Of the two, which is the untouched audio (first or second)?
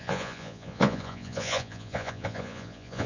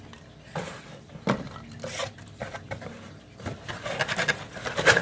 second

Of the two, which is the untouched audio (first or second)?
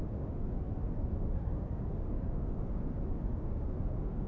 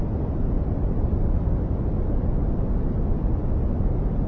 second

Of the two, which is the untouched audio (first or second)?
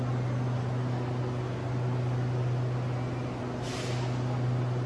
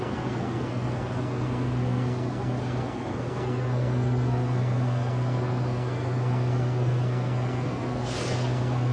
first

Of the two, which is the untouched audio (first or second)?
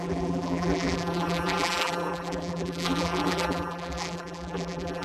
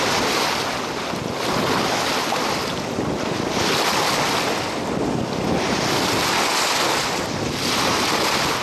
second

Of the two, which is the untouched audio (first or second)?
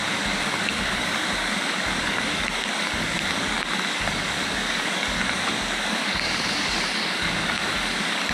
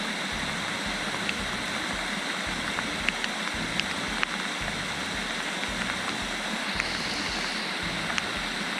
second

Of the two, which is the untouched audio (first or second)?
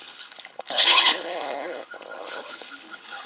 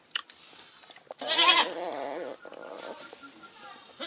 second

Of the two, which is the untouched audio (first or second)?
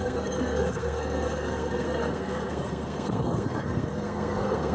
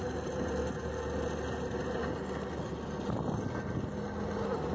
second